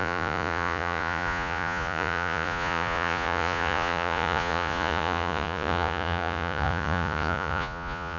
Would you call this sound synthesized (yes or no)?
yes